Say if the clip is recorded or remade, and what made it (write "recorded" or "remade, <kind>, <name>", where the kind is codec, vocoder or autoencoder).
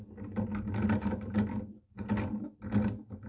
recorded